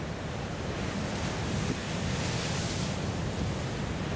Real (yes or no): yes